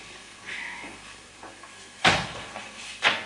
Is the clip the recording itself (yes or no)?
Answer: no